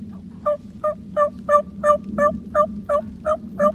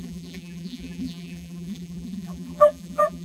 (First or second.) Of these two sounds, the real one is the first